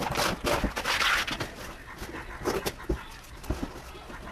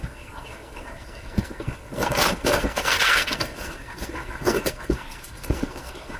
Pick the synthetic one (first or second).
second